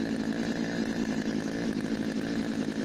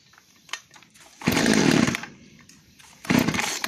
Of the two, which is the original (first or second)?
first